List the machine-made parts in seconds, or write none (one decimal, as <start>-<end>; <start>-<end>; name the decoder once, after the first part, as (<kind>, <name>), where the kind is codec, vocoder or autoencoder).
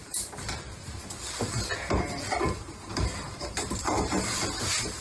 none